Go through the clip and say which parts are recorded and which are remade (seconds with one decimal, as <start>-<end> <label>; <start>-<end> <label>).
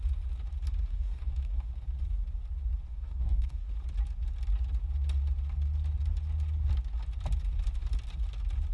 0.0-0.9 recorded; 0.9-1.7 remade; 1.7-2.9 recorded; 2.9-3.7 remade; 3.7-8.7 recorded